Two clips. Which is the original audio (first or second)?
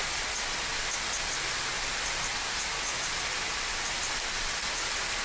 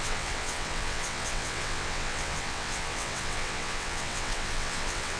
first